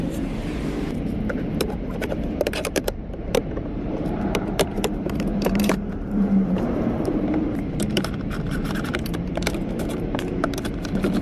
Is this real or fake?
fake